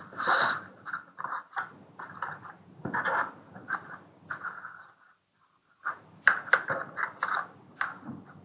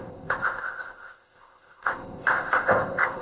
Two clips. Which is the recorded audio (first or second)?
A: first